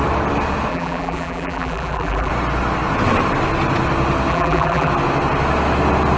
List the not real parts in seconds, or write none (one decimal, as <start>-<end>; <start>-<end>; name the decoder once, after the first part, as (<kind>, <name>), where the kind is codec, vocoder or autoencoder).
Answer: 0.7-2.3 (vocoder, BigVGAN v2); 4.3-4.9

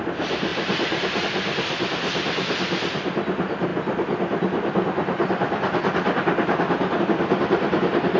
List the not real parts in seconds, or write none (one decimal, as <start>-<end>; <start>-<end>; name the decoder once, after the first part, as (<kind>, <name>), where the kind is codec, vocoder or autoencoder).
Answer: 0.0-3.7 (vocoder, BigVGAN v2); 7.0-8.2

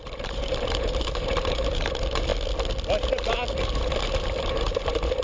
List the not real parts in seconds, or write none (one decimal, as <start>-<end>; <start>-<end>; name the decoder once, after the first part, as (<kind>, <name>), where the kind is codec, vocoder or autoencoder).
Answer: 0.0-2.3 (vocoder, BigVGAN v2); 3.5-5.2

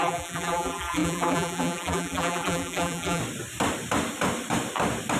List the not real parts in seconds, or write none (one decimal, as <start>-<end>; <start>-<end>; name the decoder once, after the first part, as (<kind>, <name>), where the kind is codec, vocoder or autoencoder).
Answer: 0.0-3.2 (vocoder, BigVGAN v2)

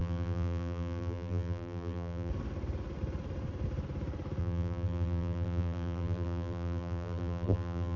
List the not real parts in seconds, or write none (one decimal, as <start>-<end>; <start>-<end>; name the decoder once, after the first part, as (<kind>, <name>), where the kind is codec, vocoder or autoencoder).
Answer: 0.0-2.3 (vocoder, BigVGAN v2); 4.4-8.0

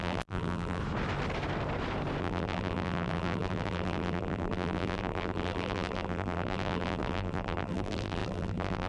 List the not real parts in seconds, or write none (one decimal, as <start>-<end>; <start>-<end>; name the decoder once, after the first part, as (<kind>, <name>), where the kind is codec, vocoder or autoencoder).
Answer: 0.0-0.8 (vocoder, BigVGAN v2); 2.2-8.9